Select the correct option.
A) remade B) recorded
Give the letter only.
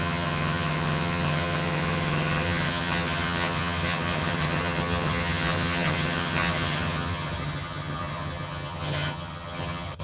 A